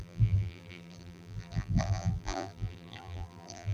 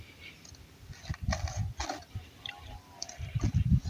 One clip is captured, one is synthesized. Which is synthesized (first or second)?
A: first